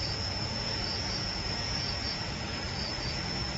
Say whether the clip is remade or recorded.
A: remade